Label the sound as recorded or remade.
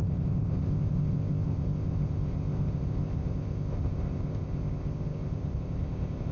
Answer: remade